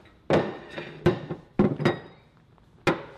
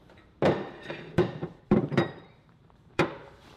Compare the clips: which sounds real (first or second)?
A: first